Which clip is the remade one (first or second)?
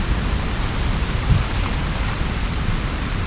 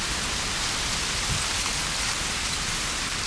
first